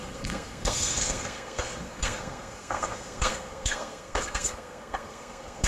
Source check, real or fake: fake